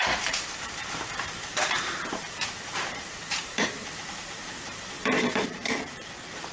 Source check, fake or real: fake